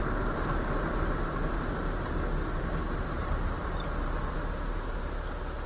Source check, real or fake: real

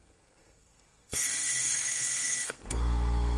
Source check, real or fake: fake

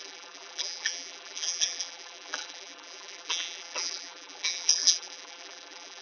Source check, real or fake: fake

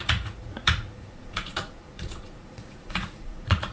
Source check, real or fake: fake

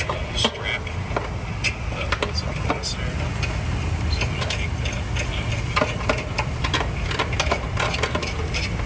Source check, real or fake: real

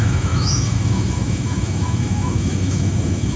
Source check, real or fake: fake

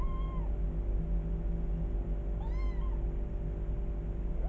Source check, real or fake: real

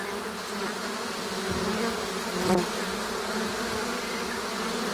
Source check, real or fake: real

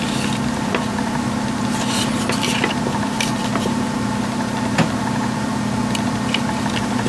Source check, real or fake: fake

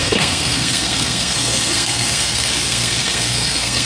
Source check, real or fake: fake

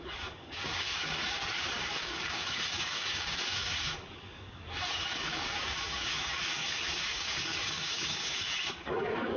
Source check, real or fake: fake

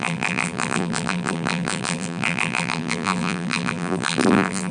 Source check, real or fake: fake